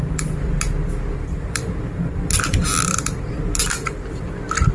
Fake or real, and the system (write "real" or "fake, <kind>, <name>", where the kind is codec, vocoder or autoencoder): fake, vocoder, BigVGAN v2